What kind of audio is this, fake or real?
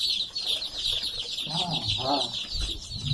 real